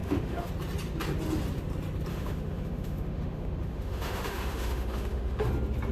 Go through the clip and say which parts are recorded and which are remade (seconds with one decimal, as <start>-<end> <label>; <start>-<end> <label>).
0.0-0.5 remade; 0.5-2.1 recorded; 2.1-5.5 remade; 5.5-5.9 recorded